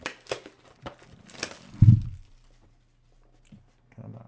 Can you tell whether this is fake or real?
real